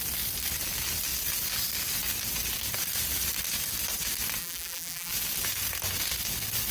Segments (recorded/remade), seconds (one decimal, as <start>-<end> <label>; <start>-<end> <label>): 0.0-4.4 recorded; 4.4-5.1 remade; 5.1-6.7 recorded